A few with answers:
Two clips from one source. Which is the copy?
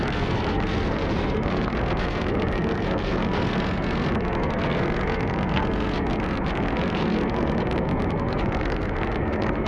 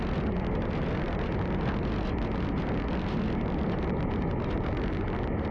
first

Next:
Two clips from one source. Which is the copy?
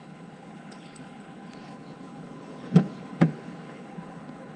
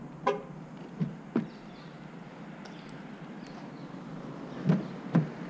first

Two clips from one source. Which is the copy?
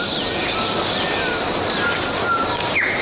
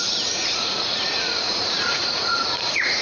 second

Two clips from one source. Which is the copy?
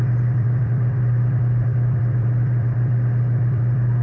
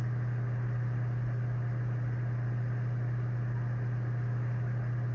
first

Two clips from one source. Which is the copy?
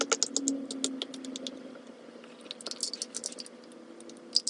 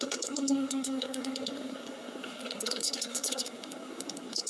second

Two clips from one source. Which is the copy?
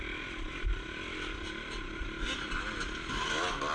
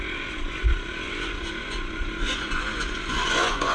second